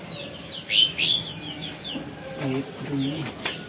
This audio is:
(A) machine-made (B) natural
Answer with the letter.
B